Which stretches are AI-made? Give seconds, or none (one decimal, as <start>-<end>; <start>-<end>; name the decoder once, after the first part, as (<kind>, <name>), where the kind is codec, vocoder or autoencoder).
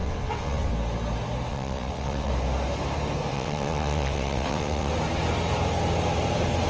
0.0-0.7 (vocoder, WaveNeXt); 1.5-2.3; 3.3-4.9